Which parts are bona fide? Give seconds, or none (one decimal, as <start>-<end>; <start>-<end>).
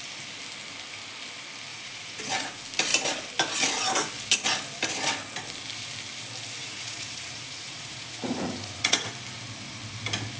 0.0-1.7; 2.2-6.6; 9.1-10.4